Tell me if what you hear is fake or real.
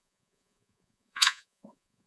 fake